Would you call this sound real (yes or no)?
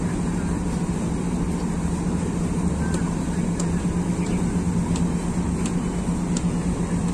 yes